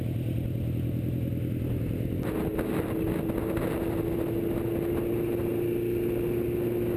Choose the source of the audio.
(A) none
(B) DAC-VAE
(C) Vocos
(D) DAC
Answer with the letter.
A